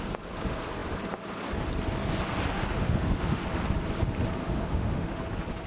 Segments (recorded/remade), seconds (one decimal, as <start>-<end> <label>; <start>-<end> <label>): 0.0-2.8 recorded; 2.8-3.4 remade; 3.4-4.4 recorded; 4.4-5.2 remade; 5.2-5.7 recorded